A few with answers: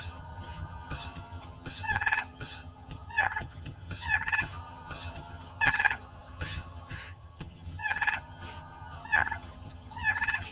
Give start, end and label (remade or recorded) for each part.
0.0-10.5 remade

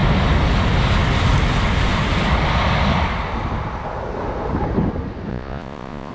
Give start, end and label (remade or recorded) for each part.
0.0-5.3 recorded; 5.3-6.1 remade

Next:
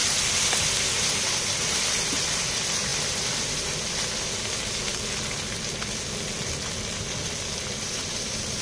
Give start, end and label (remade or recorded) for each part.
0.0-1.4 recorded; 1.4-2.9 remade; 2.9-6.7 recorded; 6.7-8.6 remade

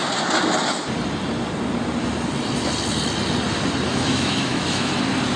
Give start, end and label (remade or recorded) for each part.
0.0-3.9 recorded; 3.9-4.9 remade; 4.9-5.4 recorded

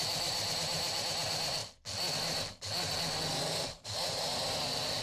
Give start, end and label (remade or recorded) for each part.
0.0-1.6 remade; 1.6-3.4 recorded; 3.4-5.0 remade